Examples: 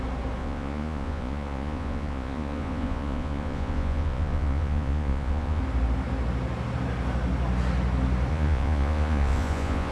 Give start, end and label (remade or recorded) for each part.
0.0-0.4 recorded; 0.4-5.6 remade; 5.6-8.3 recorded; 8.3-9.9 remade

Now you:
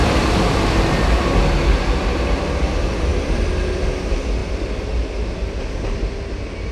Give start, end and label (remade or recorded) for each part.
0.0-6.7 recorded

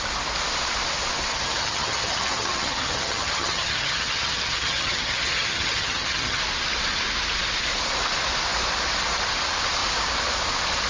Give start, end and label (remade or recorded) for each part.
0.0-1.3 recorded; 1.3-6.4 remade; 6.4-10.9 recorded

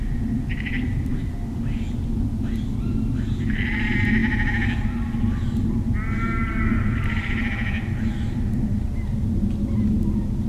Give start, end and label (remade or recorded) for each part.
0.0-10.5 recorded

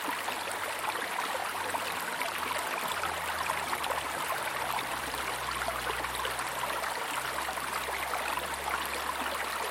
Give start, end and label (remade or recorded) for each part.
0.0-1.4 recorded; 1.4-5.2 remade; 5.2-9.7 recorded

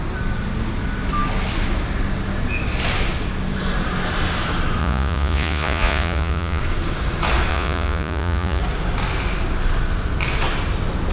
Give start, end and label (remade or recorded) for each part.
0.0-4.8 recorded; 4.8-6.6 remade; 6.6-7.5 recorded; 7.5-8.6 remade; 8.6-11.1 recorded

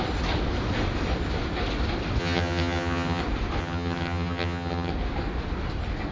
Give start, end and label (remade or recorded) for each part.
0.0-2.2 recorded; 2.2-3.2 remade; 3.2-3.6 recorded; 3.6-4.9 remade; 4.9-6.1 recorded

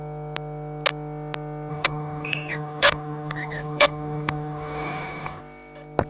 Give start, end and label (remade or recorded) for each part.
0.0-1.7 recorded; 1.7-5.4 remade; 5.4-6.1 recorded